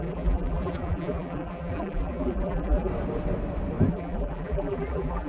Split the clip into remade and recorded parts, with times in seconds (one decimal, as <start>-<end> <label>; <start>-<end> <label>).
0.0-2.9 remade; 2.9-3.9 recorded; 3.9-5.3 remade